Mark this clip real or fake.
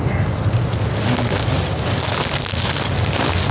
real